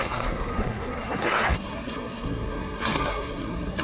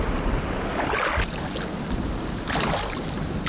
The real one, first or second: second